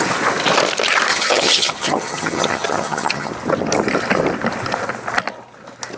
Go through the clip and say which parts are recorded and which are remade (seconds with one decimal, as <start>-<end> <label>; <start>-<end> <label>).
0.0-1.1 recorded; 1.1-3.3 remade; 3.3-6.0 recorded